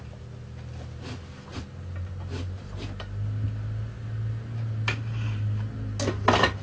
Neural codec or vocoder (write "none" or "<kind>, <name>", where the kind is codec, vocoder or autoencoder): none